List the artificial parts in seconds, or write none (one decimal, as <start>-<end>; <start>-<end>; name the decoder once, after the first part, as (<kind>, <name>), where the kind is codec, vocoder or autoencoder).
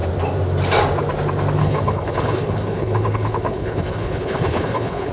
1.6-5.1 (codec, HILCodec)